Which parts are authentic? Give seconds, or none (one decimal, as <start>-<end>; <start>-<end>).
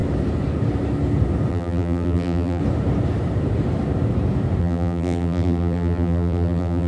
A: 0.0-1.5; 2.6-4.6